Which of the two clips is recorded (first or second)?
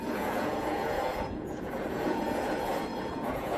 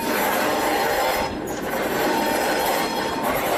second